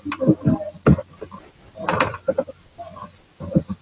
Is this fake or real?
real